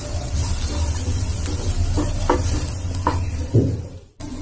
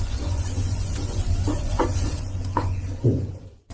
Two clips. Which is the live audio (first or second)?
first